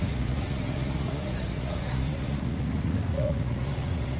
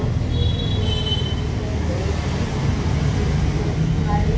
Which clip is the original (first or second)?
second